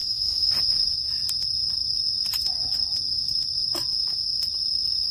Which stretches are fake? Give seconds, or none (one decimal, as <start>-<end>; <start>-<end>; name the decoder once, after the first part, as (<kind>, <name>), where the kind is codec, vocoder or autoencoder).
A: 0.0-0.5 (autoencoder, DAC-VAE)